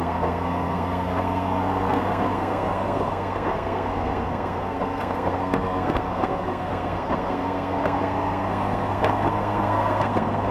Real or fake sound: fake